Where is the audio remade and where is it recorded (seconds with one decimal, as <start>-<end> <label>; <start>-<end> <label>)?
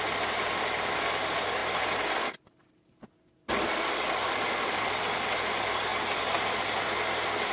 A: 0.0-7.5 recorded